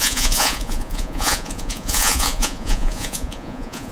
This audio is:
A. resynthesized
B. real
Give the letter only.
A